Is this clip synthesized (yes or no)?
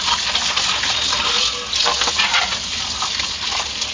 no